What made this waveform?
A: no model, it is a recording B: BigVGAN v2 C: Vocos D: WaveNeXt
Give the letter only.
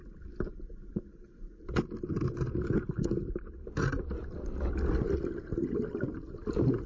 A